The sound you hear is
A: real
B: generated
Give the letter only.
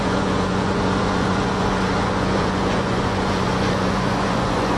B